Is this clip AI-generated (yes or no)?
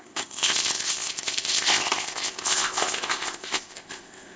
yes